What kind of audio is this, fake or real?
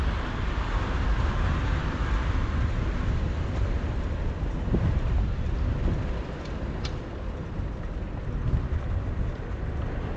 real